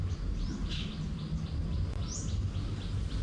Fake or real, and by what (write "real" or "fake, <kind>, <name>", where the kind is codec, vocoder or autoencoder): real